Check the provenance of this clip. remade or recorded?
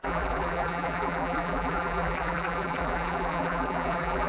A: remade